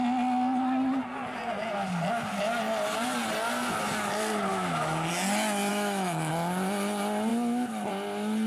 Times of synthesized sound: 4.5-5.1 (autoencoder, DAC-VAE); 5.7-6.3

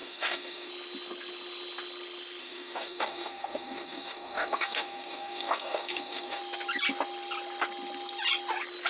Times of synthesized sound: 0.0-0.7 (codec, DAC); 2.4-6.4

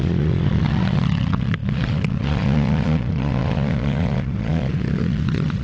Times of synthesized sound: 0.0-5.6 (vocoder, Vocos)

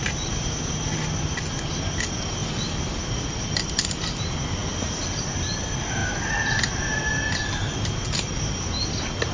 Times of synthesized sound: 2.4-4.1 (vocoder, BigVGAN v2); 4.6-5.2

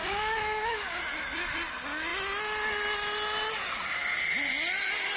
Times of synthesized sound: 0.0-1.0 (codec, DAC)